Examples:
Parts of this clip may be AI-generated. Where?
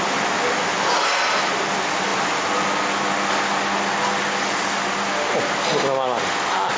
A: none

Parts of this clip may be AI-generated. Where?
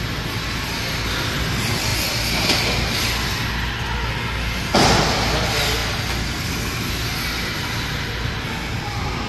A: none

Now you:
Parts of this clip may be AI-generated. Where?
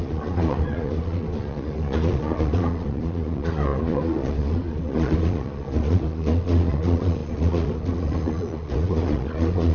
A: 0.0-9.7